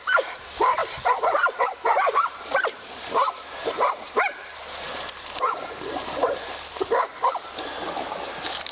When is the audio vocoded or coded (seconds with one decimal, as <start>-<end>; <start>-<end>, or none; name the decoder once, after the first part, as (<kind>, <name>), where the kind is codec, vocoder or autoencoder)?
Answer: 0.0-0.8 (vocoder, BigVGAN v2); 1.3-4.6; 7.9-8.7